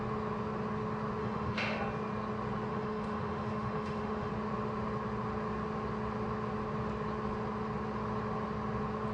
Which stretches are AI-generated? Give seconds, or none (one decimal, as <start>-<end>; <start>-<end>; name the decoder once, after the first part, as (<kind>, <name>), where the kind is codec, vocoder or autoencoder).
1.2-1.8 (autoencoder, DAC-VAE); 2.7-4.3